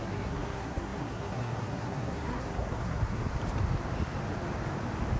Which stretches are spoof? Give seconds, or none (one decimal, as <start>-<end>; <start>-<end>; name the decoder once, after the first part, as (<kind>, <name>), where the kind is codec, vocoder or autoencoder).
0.0-3.2 (codec, SNAC)